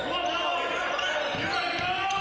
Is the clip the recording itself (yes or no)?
yes